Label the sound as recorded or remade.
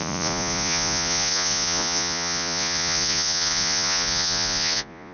remade